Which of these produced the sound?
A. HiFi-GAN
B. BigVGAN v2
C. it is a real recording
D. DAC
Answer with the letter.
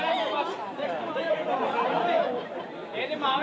C